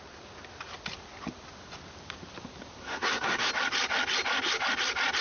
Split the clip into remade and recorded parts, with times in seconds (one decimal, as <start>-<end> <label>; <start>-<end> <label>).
0.0-2.8 recorded; 2.8-3.5 remade; 3.5-5.2 recorded